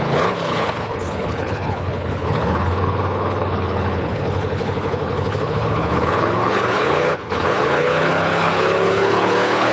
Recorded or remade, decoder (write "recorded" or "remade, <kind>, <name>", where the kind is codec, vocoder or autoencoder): remade, codec, HILCodec